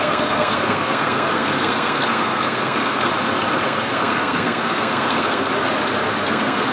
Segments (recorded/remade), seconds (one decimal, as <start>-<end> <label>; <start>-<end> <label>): 0.0-3.1 remade; 3.1-3.6 recorded; 3.6-5.5 remade; 5.5-6.1 recorded; 6.1-6.7 remade